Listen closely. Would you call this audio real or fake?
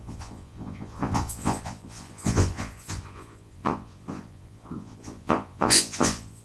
fake